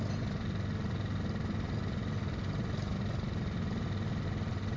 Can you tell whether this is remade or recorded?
recorded